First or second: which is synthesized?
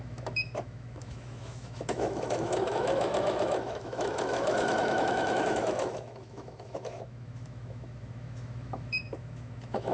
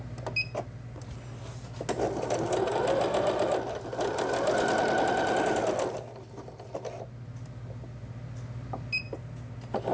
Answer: first